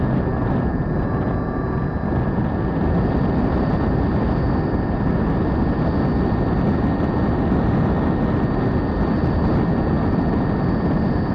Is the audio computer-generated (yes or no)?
no